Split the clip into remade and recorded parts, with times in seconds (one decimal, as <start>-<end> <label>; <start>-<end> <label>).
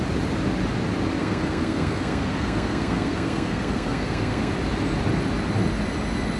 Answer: 0.0-1.2 recorded; 1.2-4.5 remade; 4.5-6.4 recorded